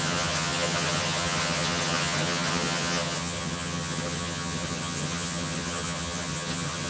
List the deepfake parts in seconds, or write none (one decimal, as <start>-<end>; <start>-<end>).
0.0-6.9

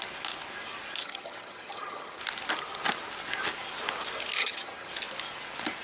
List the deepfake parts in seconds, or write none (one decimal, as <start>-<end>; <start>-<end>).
1.0-2.2; 4.4-4.9

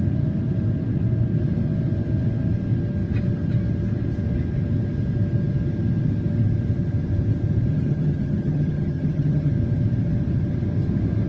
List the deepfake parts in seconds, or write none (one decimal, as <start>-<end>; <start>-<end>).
7.7-9.5

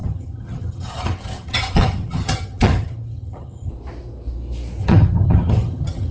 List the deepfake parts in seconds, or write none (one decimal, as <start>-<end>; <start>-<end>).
0.0-3.7; 4.8-6.1

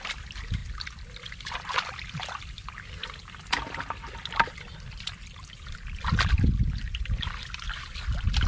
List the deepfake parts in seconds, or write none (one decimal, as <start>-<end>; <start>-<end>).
none

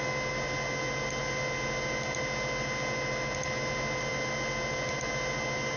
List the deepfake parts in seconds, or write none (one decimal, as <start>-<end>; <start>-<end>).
none